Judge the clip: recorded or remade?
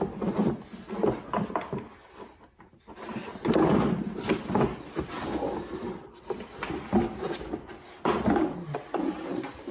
recorded